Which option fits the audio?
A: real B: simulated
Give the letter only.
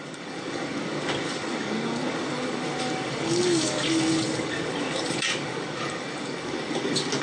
B